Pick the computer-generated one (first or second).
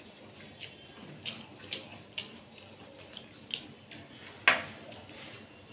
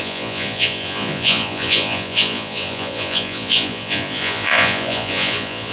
second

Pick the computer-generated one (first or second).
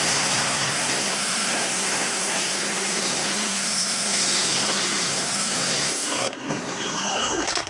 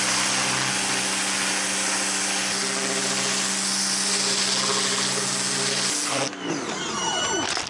first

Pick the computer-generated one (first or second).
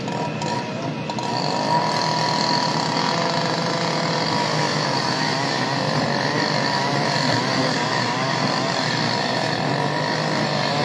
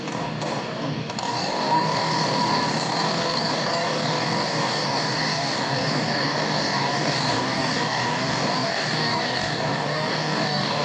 second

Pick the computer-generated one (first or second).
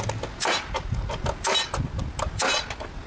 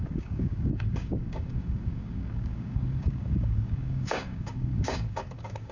second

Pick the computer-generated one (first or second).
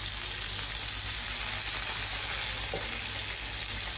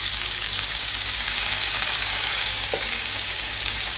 second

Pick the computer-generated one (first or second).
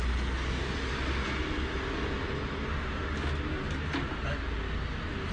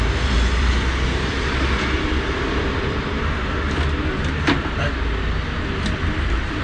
second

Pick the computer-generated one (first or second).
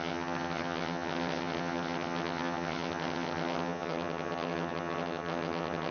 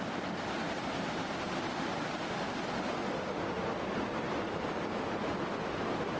first